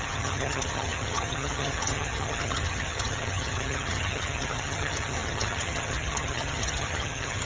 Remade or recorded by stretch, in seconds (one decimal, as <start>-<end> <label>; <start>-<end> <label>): 0.0-7.5 remade